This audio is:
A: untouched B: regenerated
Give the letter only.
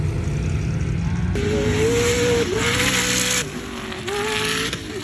A